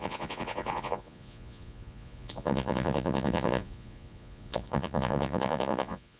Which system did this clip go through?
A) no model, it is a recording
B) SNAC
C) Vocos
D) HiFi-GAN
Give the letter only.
C